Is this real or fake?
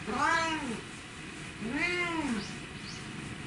real